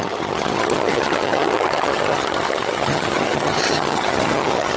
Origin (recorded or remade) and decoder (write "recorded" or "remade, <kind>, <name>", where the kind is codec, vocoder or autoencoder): remade, vocoder, HiFi-GAN